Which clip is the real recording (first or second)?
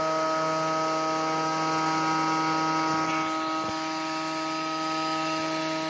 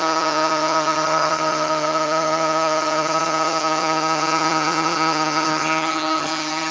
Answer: first